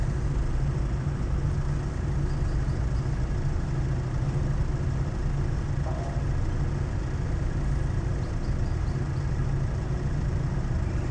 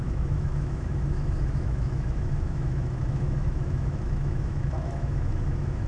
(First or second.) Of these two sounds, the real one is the first